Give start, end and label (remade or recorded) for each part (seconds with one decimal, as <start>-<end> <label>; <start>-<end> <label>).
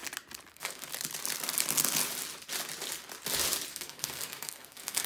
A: 0.0-0.5 recorded; 0.5-0.9 remade; 0.9-3.7 recorded; 3.7-5.1 remade